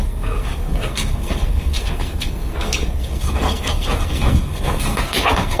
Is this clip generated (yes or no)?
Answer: yes